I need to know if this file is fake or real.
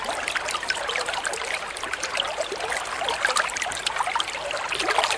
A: fake